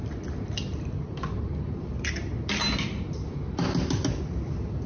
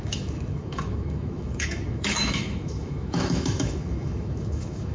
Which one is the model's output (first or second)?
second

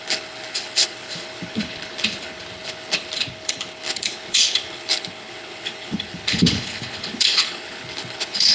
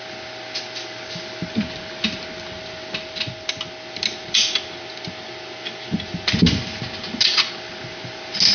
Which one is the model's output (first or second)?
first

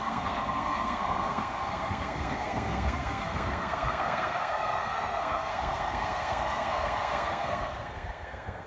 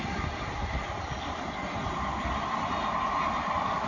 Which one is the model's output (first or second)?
first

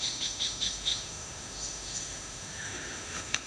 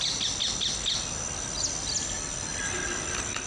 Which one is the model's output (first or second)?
first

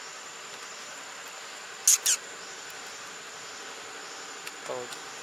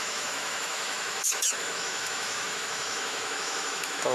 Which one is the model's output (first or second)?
second